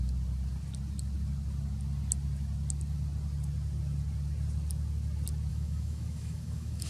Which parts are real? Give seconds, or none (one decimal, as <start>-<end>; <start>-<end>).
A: 0.0-5.5